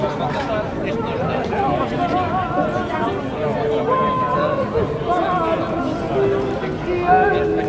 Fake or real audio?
real